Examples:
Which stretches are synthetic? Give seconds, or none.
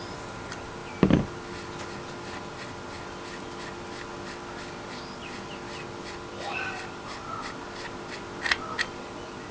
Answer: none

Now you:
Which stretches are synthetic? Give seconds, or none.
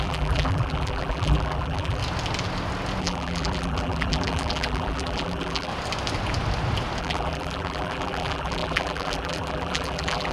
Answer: 0.0-2.0 (vocoder, BigVGAN v2); 3.0-5.7; 7.0-10.3